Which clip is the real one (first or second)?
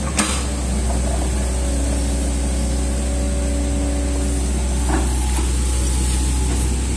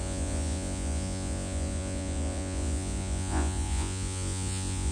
first